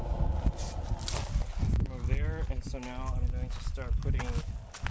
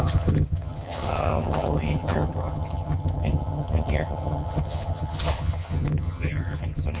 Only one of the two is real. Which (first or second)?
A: first